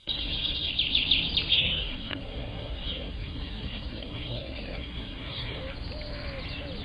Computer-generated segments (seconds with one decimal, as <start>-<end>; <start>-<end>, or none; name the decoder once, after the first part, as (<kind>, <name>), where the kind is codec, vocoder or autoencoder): 0.0-0.7 (codec, SNAC); 1.5-5.6